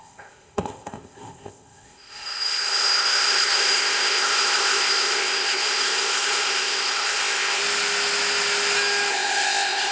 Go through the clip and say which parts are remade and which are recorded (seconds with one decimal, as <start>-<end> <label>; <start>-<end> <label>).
0.0-7.6 remade; 7.6-9.1 recorded; 9.1-9.9 remade